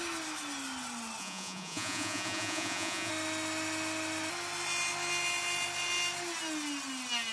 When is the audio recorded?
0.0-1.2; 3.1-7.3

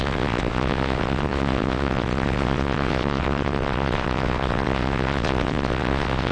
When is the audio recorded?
none

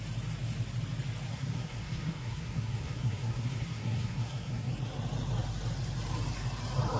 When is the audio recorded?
0.0-1.3; 4.7-7.0

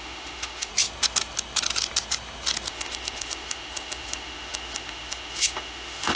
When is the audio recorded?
0.7-2.7

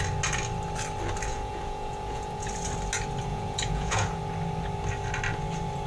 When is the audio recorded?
0.0-1.3; 2.5-3.3; 4.2-5.9

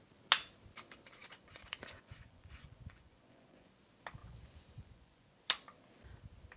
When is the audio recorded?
0.0-1.2; 3.7-4.2; 5.4-6.6